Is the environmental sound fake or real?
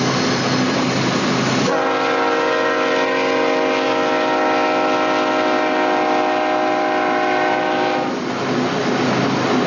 real